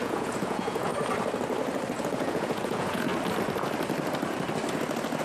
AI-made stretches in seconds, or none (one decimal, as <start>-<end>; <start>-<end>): 0.0-0.9; 2.0-3.1